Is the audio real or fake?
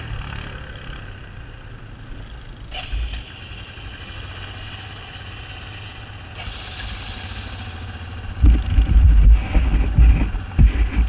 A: real